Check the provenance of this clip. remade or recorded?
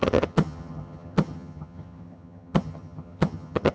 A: remade